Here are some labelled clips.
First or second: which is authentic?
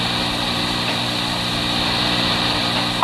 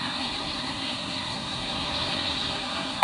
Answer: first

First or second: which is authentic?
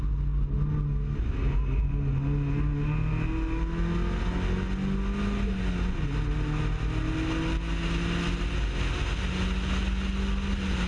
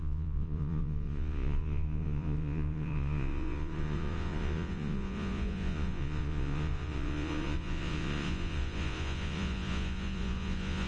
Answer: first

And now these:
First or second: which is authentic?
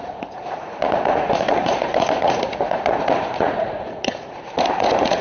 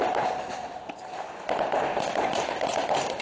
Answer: second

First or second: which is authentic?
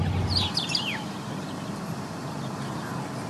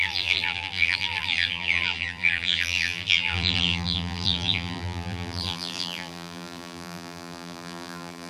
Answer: first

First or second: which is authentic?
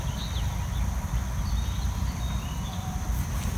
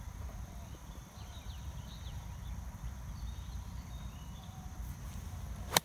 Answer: first